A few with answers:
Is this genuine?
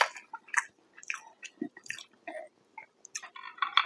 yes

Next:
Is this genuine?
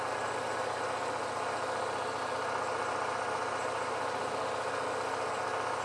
yes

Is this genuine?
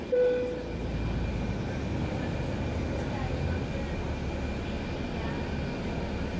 yes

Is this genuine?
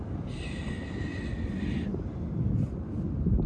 yes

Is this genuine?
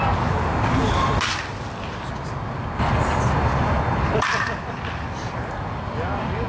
yes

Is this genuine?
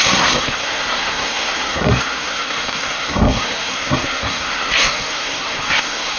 no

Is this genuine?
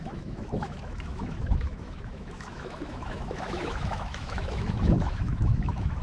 no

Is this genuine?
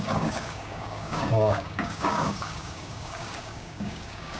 no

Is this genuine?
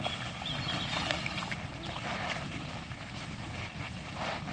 yes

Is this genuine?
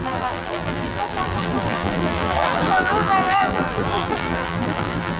no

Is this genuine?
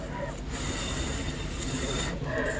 yes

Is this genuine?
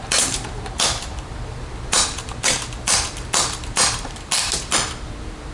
no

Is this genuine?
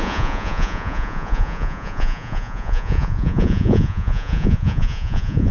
no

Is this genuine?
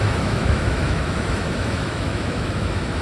no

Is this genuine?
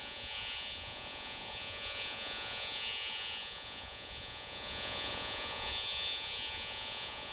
no